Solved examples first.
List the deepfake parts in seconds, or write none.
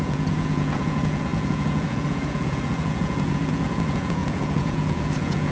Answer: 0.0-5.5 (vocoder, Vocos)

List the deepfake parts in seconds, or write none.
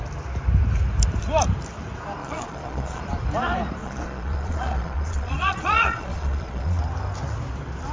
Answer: 2.2-3.0 (vocoder, Vocos); 3.8-6.8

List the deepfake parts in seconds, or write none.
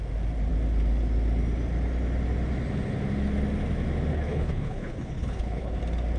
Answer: 4.1-5.8 (codec, HILCodec)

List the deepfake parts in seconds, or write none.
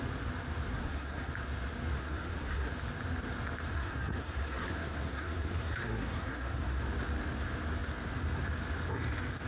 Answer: 0.7-1.3 (codec, SNAC); 2.0-2.7; 3.7-6.8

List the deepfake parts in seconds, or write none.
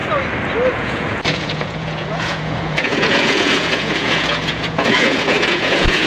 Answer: 0.7-6.1 (vocoder, Vocos)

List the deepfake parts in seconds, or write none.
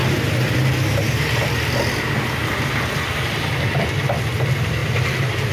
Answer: none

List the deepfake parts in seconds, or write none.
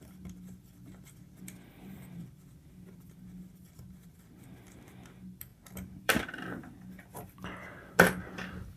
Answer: 0.0-5.5 (vocoder, BigVGAN v2); 6.0-8.8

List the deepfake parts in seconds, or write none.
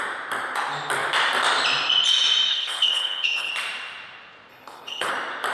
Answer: 2.5-3.5 (codec, HILCodec); 4.5-5.1